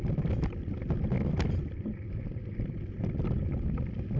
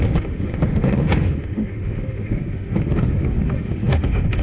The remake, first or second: second